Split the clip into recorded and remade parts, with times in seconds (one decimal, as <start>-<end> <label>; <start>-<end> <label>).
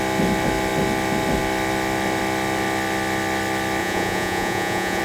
0.0-3.8 recorded; 3.8-5.0 remade